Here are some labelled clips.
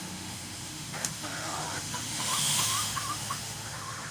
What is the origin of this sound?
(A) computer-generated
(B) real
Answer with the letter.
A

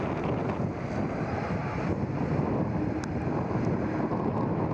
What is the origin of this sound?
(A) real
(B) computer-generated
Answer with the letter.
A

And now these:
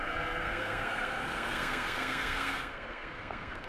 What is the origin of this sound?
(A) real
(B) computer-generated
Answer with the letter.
B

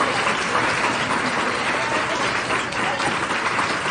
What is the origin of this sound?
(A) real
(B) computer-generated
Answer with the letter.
A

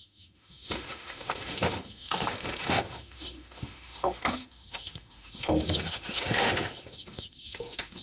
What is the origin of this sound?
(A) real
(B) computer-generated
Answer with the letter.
B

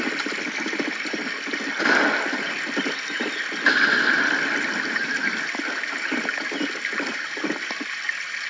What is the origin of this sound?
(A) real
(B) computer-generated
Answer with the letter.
A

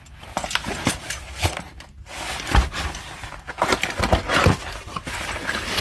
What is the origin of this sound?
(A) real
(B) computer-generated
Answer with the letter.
A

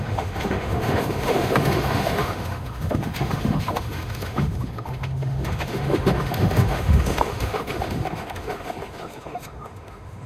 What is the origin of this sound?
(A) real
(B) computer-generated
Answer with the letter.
B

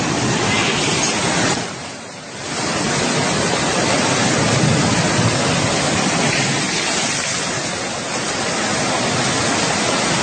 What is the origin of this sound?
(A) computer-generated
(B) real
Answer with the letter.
B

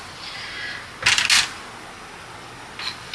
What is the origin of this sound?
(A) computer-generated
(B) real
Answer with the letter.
B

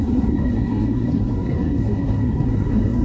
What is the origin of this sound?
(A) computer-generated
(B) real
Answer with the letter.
A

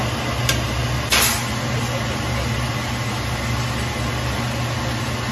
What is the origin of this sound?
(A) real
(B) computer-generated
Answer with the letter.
A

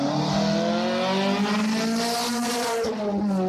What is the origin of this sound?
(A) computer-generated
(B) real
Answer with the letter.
B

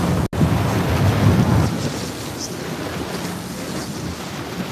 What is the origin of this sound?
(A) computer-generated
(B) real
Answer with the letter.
B